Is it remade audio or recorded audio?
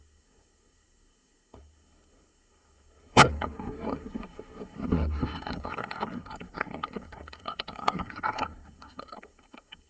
remade